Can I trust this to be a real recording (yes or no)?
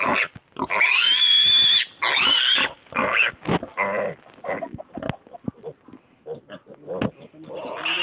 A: yes